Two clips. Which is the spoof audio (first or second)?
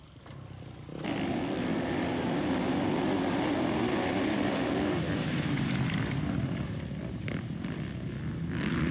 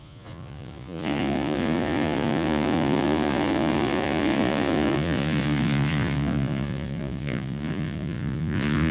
second